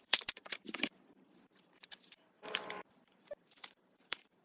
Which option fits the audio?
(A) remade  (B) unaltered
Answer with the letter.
A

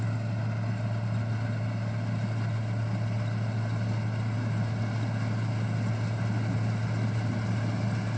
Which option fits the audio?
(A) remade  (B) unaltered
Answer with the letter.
B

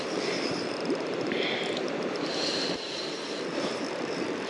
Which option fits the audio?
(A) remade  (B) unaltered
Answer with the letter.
A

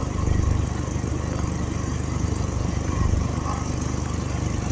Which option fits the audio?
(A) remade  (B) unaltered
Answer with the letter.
A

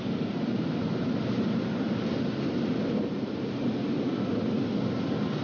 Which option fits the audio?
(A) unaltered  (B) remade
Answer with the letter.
A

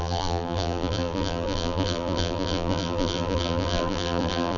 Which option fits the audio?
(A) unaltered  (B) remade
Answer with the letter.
B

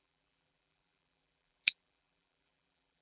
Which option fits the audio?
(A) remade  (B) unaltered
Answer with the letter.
A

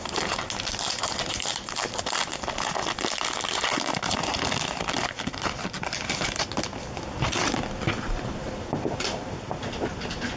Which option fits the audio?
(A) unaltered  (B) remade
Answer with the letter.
A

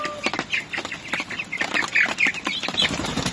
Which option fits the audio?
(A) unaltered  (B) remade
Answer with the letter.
A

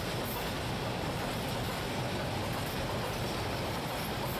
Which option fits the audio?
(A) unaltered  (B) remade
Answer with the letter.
A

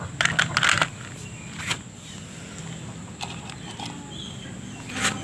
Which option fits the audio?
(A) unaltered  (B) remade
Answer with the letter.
A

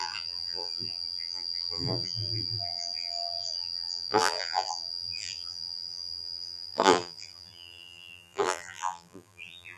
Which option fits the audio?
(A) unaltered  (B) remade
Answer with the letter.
B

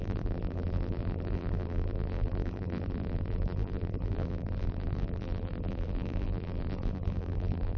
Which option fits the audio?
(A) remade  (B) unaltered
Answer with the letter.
A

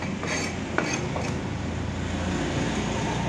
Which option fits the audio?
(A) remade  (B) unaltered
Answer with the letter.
B